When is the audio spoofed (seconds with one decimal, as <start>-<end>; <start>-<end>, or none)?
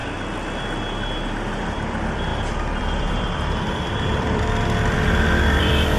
1.6-6.0